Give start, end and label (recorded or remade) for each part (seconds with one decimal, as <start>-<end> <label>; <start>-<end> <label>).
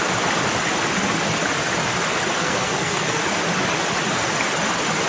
0.0-2.4 recorded; 2.4-3.2 remade; 3.2-5.1 recorded